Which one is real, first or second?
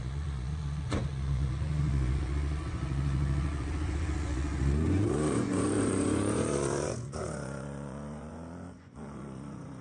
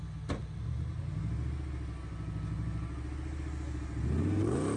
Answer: second